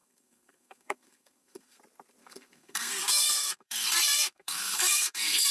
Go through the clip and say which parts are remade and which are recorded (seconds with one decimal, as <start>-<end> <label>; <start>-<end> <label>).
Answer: 0.0-1.8 remade; 1.8-2.2 recorded; 2.2-5.5 remade